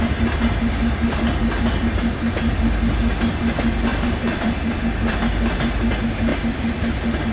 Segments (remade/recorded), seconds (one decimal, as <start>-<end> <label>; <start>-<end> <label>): 0.0-3.9 recorded; 3.9-4.8 remade; 4.8-7.3 recorded